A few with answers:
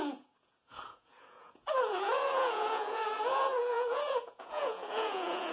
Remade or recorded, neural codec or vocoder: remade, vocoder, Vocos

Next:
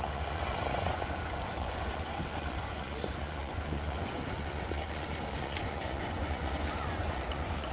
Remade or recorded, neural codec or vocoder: remade, vocoder, Vocos